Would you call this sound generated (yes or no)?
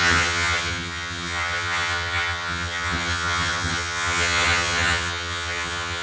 yes